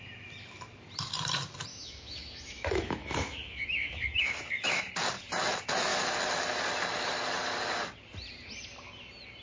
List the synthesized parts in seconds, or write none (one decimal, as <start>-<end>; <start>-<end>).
1.7-4.9